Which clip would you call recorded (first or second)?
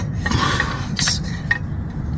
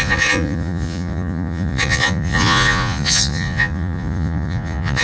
first